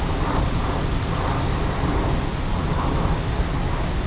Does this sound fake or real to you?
real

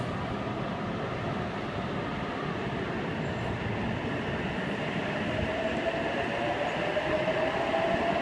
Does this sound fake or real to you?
real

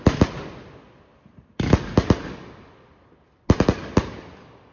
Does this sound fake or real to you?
real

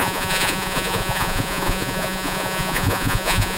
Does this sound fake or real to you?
fake